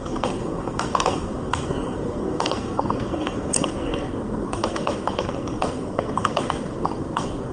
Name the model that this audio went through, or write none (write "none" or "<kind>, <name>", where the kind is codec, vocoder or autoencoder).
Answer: codec, SNAC